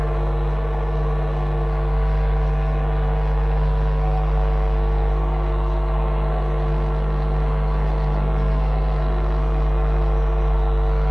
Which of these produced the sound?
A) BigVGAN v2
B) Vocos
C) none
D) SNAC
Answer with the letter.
D